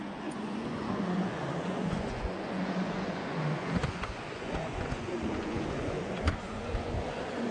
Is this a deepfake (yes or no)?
yes